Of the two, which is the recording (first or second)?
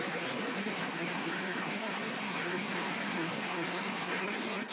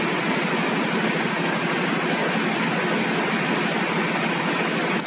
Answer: second